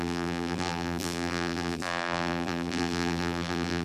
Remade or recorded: remade